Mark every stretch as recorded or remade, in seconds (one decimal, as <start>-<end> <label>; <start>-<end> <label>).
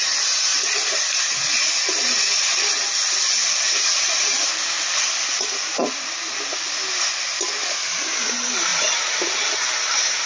0.0-10.2 recorded